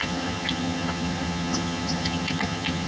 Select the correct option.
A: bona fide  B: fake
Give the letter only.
B